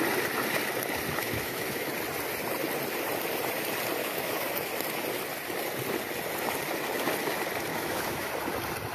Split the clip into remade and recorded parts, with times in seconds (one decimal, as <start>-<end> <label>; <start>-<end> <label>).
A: 0.0-1.2 recorded; 1.2-1.9 remade; 1.9-4.0 recorded; 4.0-4.7 remade; 4.7-7.7 recorded; 7.7-8.3 remade; 8.3-8.9 recorded